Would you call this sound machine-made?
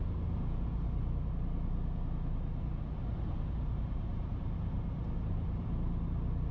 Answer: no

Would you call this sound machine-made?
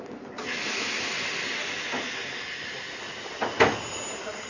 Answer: no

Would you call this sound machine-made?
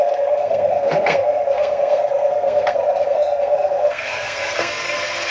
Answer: yes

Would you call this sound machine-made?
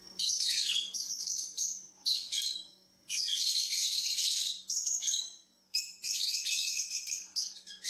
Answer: yes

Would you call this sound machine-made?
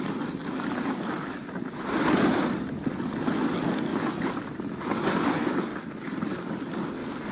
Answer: no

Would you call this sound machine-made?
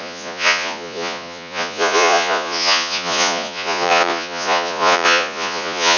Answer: yes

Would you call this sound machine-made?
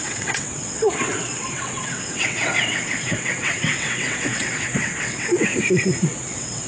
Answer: yes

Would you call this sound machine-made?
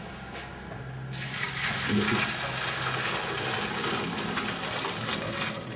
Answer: no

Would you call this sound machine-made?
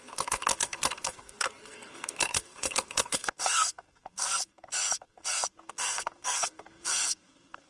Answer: yes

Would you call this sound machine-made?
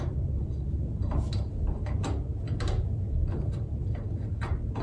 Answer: no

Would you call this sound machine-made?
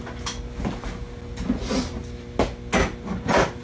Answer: no